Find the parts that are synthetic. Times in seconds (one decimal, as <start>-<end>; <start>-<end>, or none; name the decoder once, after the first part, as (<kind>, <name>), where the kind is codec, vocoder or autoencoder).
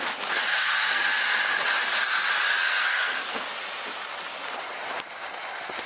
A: 0.5-1.2 (codec, SNAC); 2.6-3.4